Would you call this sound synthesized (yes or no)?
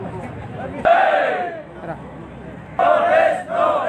no